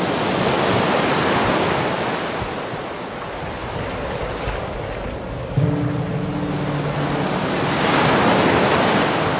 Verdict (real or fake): real